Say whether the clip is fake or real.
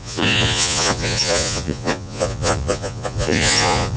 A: fake